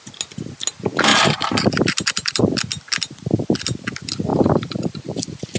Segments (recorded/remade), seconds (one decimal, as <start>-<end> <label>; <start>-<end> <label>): 0.0-1.1 recorded; 1.1-2.4 remade; 2.4-4.3 recorded; 4.3-5.6 remade